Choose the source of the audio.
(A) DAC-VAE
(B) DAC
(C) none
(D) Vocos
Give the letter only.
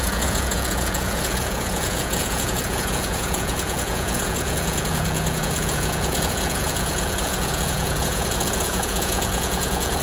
D